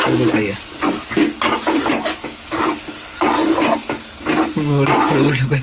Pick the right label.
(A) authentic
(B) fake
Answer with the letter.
A